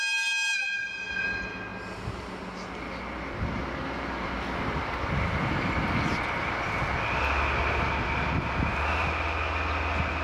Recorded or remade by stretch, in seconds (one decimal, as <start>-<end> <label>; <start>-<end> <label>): 0.0-10.2 recorded